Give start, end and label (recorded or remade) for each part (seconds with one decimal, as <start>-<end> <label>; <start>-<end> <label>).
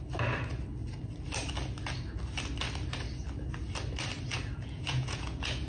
0.0-4.3 recorded; 4.3-5.7 remade